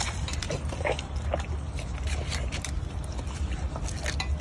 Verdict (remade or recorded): recorded